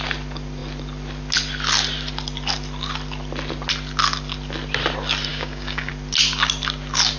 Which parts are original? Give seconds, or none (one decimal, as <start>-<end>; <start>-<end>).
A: 0.0-5.3; 5.9-7.2